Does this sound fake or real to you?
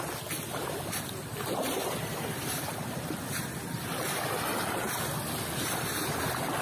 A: real